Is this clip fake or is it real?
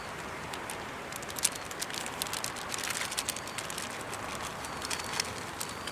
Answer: real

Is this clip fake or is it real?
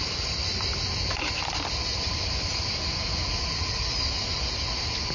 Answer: real